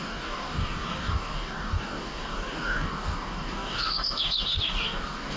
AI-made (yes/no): yes